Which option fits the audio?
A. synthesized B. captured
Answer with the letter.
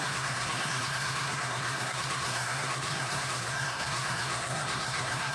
A